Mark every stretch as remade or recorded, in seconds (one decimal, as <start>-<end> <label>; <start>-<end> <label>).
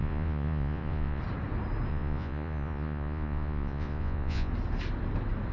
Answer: 0.0-1.2 remade; 1.2-1.9 recorded; 1.9-4.5 remade; 4.5-5.5 recorded